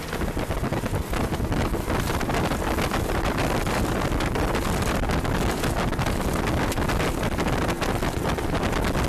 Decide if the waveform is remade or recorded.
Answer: recorded